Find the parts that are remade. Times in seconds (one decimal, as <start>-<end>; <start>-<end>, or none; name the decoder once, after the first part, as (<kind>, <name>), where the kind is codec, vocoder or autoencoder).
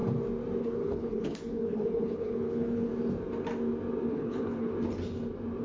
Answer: 0.6-2.9 (codec, HILCodec); 4.1-4.7